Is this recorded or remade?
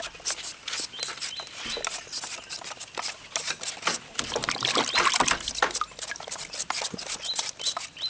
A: recorded